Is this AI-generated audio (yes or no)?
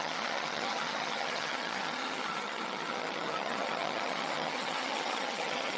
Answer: yes